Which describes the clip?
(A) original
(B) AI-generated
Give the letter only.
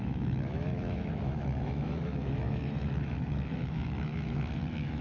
B